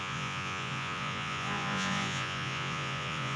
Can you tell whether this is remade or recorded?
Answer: remade